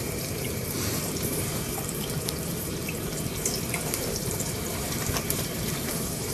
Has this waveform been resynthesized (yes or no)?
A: yes